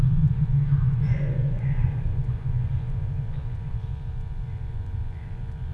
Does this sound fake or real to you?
fake